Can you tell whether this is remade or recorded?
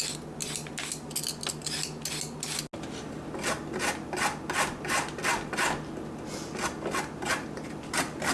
recorded